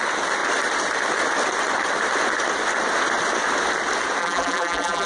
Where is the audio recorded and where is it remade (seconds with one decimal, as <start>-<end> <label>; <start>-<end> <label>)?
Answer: 0.0-4.2 recorded; 4.2-5.1 remade